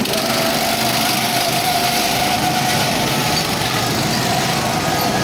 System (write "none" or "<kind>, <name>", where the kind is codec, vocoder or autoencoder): vocoder, BigVGAN v2